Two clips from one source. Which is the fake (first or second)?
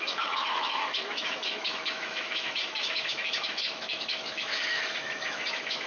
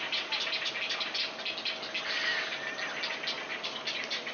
first